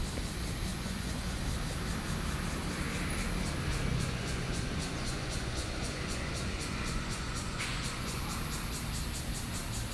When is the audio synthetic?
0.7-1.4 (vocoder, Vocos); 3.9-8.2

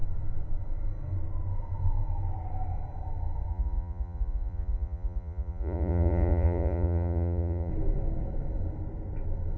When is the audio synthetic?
3.5-7.7 (vocoder, Vocos)

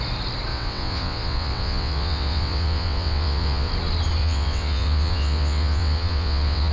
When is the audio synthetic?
0.5-3.7 (vocoder, WaveNeXt); 4.2-6.7

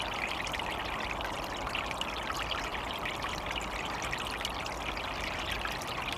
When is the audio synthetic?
none

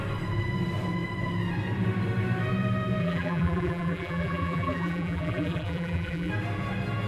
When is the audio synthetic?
3.0-6.3 (vocoder, BigVGAN v2)

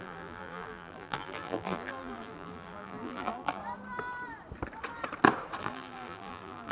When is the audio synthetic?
0.0-3.6 (vocoder, BigVGAN v2); 5.6-6.7

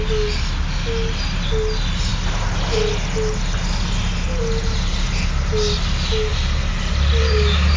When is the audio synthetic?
none

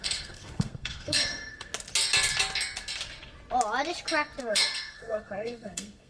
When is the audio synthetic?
0.0-1.7 (codec, SNAC); 4.4-6.1